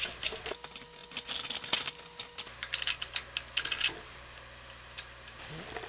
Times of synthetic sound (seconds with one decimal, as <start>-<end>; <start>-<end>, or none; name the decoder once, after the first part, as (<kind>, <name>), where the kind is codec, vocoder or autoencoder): none